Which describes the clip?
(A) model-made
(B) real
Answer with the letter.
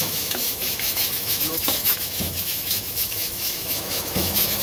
A